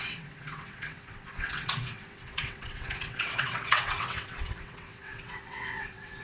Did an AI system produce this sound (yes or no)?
yes